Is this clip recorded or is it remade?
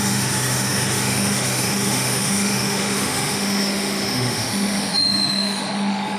remade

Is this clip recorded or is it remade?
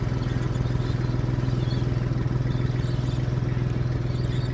recorded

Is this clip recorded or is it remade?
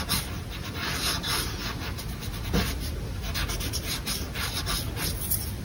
recorded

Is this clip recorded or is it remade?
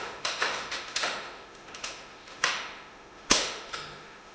remade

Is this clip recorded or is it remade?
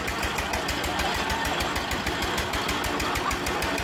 recorded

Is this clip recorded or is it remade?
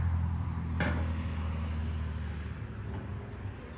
recorded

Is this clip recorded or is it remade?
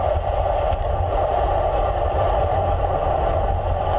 recorded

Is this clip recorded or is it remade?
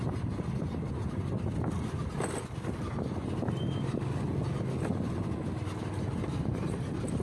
recorded